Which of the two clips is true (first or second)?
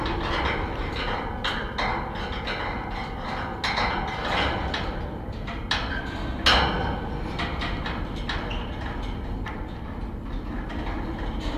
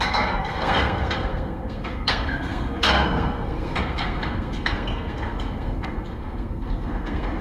first